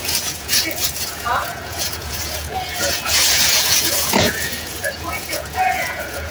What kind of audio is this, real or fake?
fake